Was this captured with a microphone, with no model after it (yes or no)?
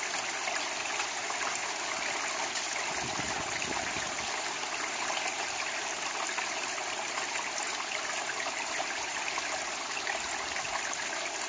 yes